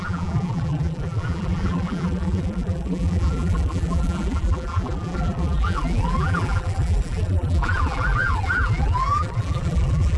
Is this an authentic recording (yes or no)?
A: no